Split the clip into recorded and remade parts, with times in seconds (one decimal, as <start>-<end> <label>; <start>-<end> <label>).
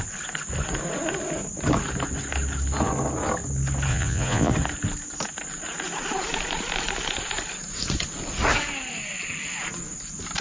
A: 0.0-3.9 recorded; 3.9-4.5 remade; 4.5-10.4 recorded